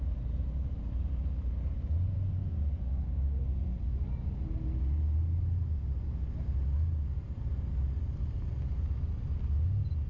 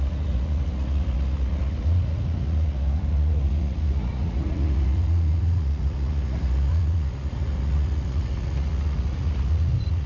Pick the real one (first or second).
first